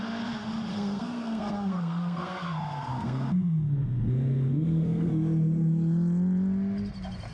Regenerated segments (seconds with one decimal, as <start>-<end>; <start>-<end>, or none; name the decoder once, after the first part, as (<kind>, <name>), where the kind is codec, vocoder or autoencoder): 0.7-5.1 (codec, SNAC)